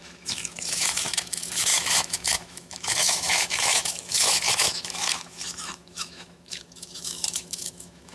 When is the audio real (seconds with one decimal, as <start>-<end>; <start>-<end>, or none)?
none